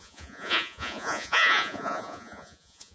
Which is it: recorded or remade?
remade